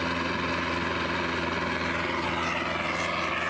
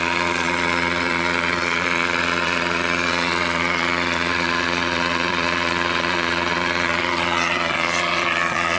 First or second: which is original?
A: first